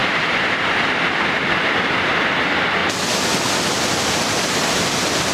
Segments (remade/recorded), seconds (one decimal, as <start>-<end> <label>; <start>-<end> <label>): 0.0-1.4 remade; 1.4-5.3 recorded